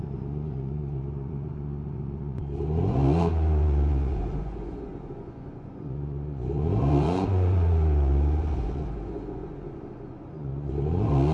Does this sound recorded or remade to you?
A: remade